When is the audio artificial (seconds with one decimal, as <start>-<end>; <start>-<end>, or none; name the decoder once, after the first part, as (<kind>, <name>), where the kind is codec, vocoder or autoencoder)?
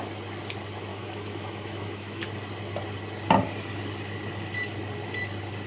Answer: 0.9-2.3 (autoencoder, DAC-VAE)